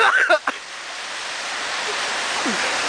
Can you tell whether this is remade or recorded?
recorded